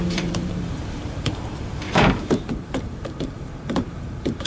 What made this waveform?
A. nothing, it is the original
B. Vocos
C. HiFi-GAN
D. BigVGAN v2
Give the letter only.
D